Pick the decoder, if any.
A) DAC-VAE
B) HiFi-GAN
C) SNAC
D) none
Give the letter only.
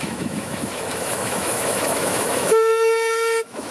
A